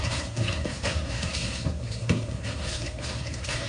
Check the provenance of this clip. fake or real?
fake